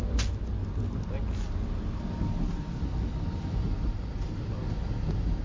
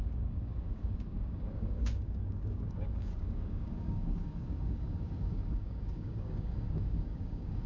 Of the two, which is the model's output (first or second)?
second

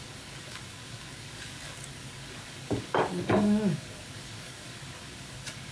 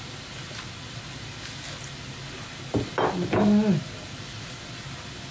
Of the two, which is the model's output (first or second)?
first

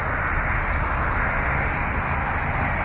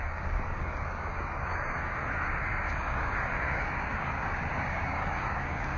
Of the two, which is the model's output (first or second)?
second